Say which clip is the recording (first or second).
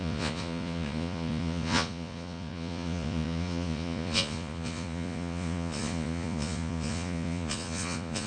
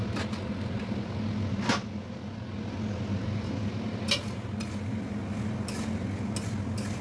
second